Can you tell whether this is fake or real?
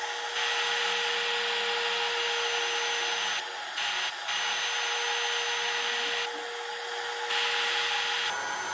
real